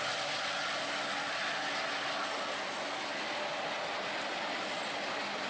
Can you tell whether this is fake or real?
real